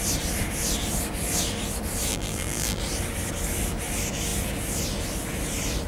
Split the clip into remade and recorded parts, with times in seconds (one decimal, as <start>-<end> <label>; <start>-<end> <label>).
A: 0.0-2.1 recorded; 2.1-2.8 remade; 2.8-5.9 recorded